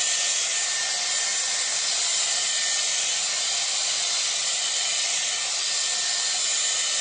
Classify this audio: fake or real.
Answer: real